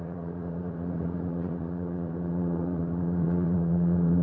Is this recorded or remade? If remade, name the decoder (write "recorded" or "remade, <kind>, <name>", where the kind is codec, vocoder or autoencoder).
remade, vocoder, Vocos